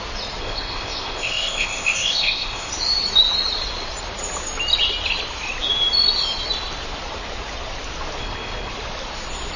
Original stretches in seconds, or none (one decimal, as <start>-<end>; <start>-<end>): 0.0-0.4; 2.7-8.2; 8.7-9.6